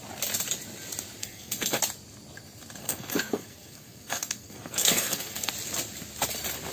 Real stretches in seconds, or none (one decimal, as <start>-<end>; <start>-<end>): 0.0-1.2; 1.8-2.8; 5.5-6.7